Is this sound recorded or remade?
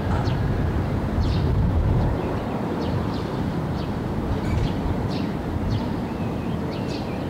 remade